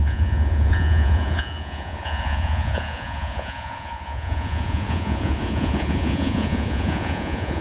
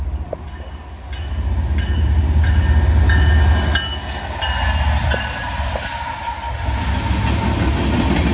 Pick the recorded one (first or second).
second